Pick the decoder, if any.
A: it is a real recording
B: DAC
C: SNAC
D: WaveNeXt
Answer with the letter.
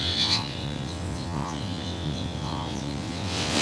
D